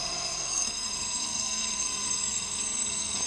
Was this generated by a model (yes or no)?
yes